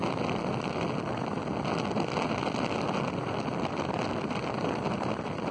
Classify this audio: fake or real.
real